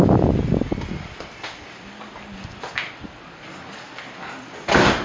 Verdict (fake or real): real